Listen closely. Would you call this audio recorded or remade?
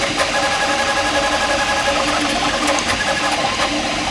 recorded